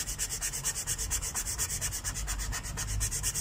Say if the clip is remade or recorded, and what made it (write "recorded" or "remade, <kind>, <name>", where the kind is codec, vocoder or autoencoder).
recorded